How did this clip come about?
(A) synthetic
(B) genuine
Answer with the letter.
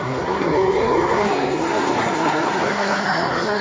A